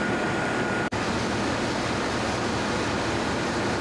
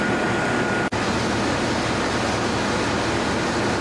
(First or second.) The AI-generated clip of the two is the first